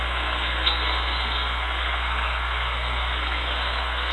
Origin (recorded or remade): remade